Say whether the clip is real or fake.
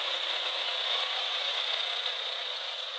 fake